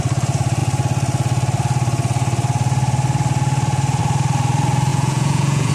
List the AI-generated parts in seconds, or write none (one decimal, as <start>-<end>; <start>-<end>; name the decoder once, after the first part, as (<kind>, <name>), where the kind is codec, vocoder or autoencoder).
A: 4.9-5.7 (vocoder, Vocos)